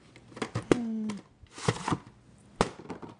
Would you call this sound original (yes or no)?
yes